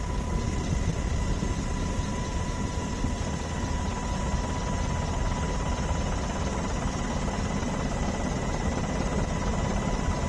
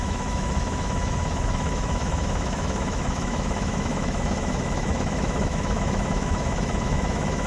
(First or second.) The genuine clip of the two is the first